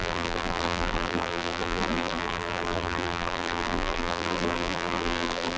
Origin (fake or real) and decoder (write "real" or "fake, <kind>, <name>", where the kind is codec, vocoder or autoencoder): fake, vocoder, BigVGAN v2